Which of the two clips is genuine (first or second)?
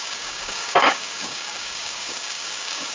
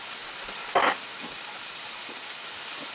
second